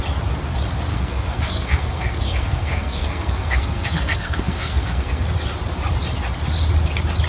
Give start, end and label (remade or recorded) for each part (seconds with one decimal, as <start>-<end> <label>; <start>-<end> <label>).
0.0-0.9 recorded; 0.9-5.3 remade; 5.3-7.3 recorded